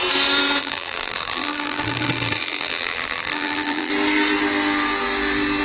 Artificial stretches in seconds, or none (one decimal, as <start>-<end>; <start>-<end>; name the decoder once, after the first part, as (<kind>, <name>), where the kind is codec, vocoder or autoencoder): 0.6-3.9 (vocoder, BigVGAN v2)